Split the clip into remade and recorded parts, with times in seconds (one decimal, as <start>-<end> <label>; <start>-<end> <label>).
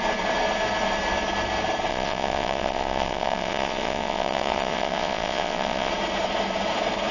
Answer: 0.0-1.9 recorded; 1.9-5.9 remade; 5.9-7.1 recorded